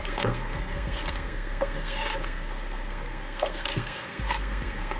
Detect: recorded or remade remade